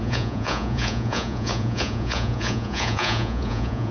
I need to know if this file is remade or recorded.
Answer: remade